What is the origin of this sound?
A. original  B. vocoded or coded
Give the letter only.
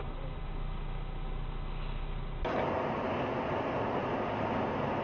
A